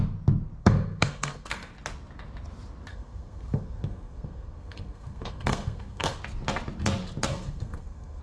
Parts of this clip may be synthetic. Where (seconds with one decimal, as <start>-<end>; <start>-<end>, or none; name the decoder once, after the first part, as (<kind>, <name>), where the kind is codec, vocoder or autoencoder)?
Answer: 0.6-1.7 (codec, SNAC); 2.9-6.2; 7.3-8.2